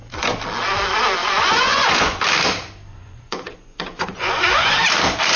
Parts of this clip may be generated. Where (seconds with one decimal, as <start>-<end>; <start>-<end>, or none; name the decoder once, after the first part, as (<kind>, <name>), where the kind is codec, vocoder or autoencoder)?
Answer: 1.2-2.2 (vocoder, Vocos); 2.9-4.7